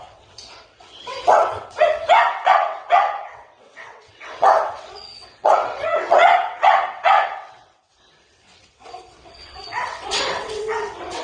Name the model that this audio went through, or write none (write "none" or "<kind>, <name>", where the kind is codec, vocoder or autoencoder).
vocoder, WaveNeXt